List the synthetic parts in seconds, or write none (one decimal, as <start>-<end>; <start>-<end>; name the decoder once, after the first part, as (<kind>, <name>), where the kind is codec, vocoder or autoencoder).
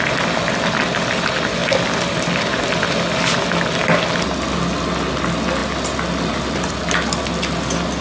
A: 1.6-2.6 (vocoder, BigVGAN v2); 5.6-7.2